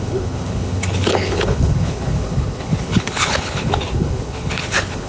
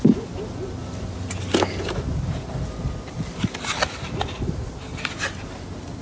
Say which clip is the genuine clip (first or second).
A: second